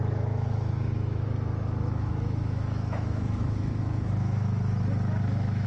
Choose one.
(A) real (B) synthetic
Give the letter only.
B